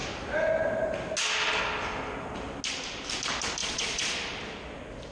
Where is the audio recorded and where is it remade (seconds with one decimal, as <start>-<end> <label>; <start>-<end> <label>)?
0.0-3.6 recorded; 3.6-4.4 remade; 4.4-5.1 recorded